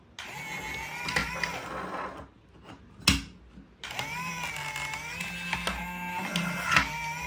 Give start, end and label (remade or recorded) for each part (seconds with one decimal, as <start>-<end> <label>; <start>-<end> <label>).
0.0-7.3 recorded